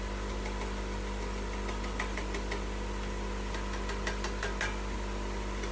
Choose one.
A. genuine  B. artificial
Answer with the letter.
A